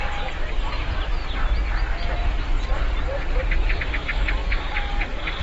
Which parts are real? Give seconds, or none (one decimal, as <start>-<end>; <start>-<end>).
1.2-2.1